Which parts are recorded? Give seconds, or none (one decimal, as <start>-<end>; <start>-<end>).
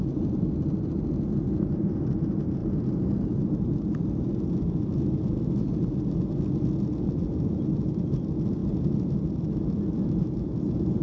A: 0.0-11.0